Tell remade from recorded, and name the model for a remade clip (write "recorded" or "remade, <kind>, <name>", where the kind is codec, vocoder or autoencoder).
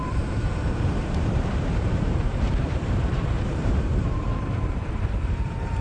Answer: remade, vocoder, BigVGAN v2